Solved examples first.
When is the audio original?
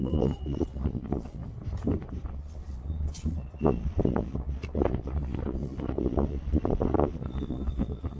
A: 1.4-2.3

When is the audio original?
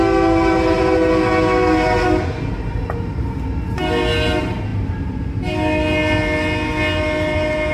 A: 0.0-7.7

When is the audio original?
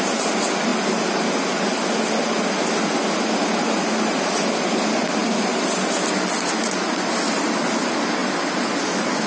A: 0.0-5.2; 5.7-8.2; 8.7-9.3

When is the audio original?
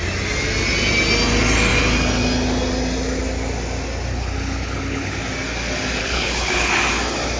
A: 0.0-4.1; 5.2-6.0; 6.7-7.4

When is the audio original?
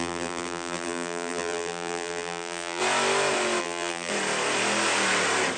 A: 2.8-3.6; 4.1-5.6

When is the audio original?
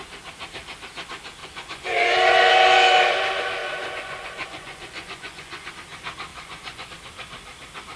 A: 0.0-1.4; 2.5-3.6; 5.7-6.3; 6.9-8.0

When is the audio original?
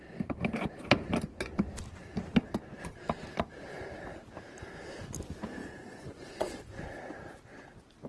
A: 0.0-5.6; 6.8-8.1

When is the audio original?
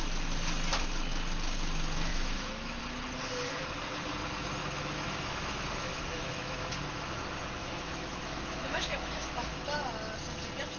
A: 0.0-2.1; 2.8-4.6; 7.1-7.6; 9.5-10.8